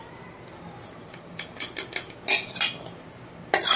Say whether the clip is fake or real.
real